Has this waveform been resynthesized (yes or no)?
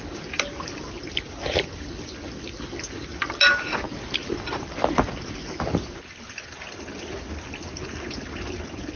no